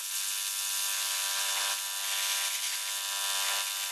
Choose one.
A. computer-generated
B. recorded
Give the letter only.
B